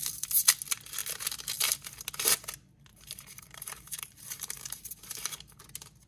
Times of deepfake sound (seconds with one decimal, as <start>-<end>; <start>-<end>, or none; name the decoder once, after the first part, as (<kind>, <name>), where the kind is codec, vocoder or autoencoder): 2.9-5.6 (vocoder, BigVGAN v2)